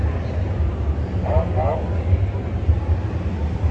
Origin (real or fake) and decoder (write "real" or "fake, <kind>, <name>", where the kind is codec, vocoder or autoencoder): real